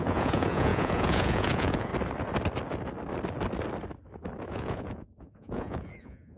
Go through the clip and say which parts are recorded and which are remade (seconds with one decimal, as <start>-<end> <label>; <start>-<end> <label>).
0.0-1.9 remade; 1.9-4.5 recorded; 4.5-6.4 remade